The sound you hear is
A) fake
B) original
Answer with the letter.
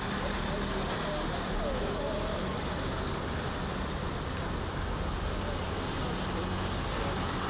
B